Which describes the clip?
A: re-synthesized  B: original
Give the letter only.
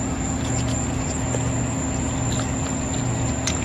B